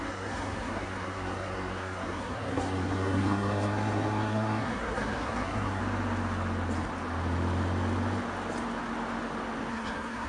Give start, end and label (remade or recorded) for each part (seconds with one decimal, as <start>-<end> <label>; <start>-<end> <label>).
0.0-5.8 remade; 5.8-9.7 recorded; 9.7-10.3 remade